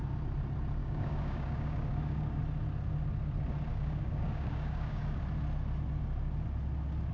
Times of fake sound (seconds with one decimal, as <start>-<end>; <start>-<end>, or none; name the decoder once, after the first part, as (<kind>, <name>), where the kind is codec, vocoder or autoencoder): 0.8-2.4 (codec, DAC); 3.7-5.2